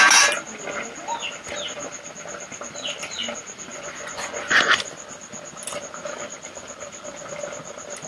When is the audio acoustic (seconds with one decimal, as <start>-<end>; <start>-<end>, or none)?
0.0-3.7; 4.9-8.1